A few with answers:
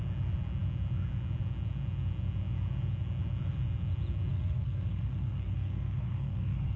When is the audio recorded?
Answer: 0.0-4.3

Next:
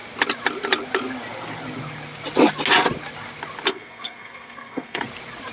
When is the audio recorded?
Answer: 0.0-3.7; 5.0-5.5

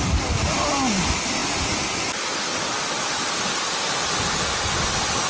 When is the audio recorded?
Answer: 0.0-5.3

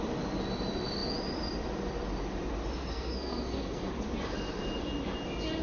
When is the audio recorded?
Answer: 0.0-2.9; 3.9-5.6

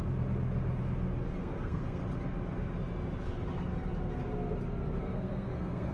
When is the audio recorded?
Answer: 0.0-1.4; 2.0-5.0